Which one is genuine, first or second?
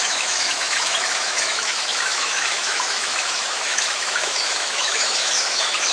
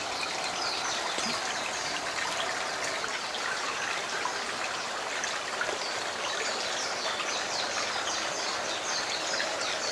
second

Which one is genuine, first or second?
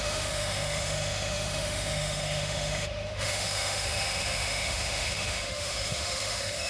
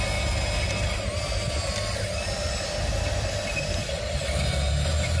second